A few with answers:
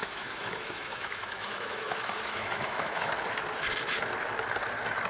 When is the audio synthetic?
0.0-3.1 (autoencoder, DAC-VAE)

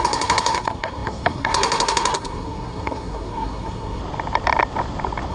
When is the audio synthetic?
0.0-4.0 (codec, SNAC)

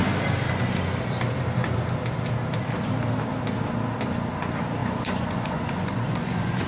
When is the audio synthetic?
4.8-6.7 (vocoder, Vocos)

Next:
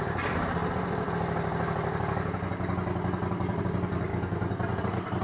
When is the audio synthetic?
0.0-0.6 (vocoder, BigVGAN v2); 3.6-4.1; 4.8-5.2

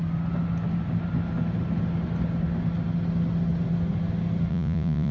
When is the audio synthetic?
4.5-5.1 (vocoder, Vocos)

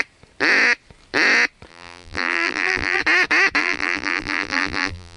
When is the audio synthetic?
1.7-3.0 (vocoder, BigVGAN v2); 3.6-5.2